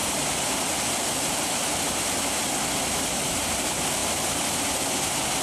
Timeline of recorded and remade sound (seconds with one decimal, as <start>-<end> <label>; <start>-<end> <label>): 0.0-0.5 remade; 0.5-4.0 recorded; 4.0-4.6 remade; 4.6-5.4 recorded